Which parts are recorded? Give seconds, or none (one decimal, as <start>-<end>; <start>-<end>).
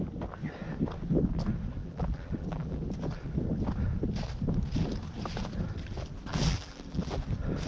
0.0-1.8; 2.8-6.3; 7.2-7.7